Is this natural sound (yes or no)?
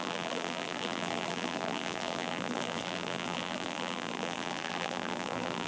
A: no